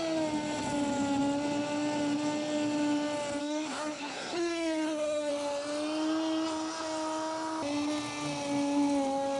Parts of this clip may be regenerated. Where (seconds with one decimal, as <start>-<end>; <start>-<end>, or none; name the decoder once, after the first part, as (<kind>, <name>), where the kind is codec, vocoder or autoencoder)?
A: 3.4-5.3 (codec, SNAC)